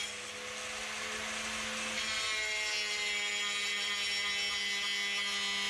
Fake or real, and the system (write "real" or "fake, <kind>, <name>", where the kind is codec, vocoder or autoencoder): real